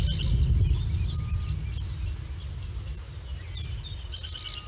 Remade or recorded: recorded